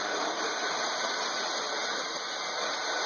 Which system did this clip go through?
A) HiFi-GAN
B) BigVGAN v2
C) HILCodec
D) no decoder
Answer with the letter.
D